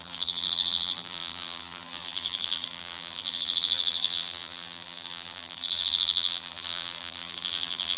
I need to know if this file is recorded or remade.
remade